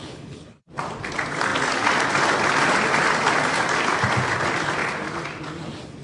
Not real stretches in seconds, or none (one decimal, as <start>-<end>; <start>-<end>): 0.0-0.6